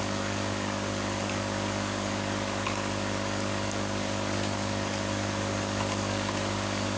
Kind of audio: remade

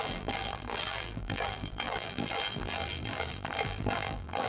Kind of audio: remade